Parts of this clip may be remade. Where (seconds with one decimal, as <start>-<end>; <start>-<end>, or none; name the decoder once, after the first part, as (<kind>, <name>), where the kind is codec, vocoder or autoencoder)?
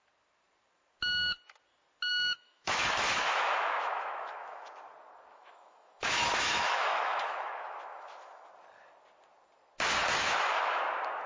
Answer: 2.1-4.7 (autoencoder, DAC-VAE); 5.3-8.5; 10.1-10.8